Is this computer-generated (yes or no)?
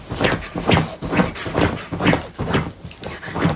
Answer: no